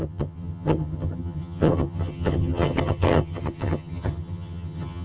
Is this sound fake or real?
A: fake